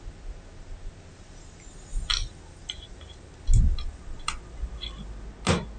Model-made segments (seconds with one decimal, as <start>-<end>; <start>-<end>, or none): none